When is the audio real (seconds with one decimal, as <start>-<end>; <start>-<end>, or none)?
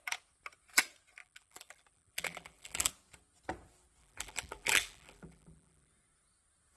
0.0-1.2; 2.9-4.0; 5.9-6.8